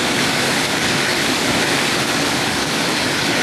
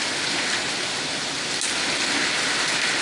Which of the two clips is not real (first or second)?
first